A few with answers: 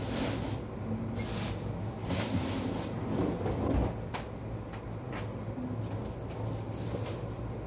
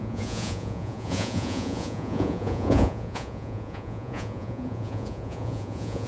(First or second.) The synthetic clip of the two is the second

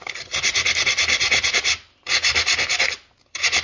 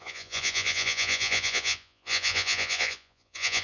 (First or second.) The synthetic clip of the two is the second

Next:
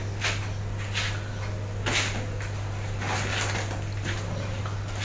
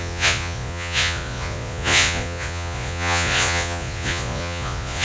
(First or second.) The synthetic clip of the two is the second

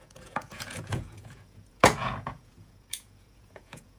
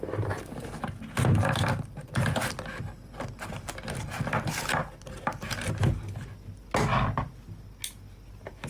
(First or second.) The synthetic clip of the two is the first